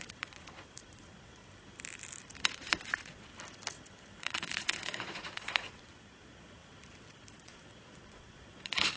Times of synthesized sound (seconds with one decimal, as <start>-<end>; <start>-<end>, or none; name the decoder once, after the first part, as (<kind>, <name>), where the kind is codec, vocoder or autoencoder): 0.0-1.4 (vocoder, Vocos); 2.5-3.3; 4.2-6.6; 7.3-9.0